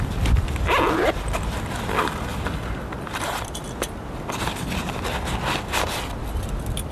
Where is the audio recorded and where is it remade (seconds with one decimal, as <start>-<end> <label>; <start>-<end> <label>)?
0.0-6.9 recorded